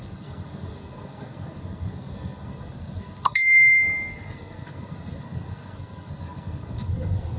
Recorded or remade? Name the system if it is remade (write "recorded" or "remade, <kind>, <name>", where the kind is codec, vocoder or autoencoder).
remade, codec, SNAC